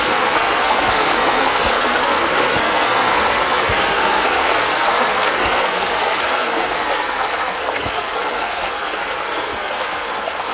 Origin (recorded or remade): remade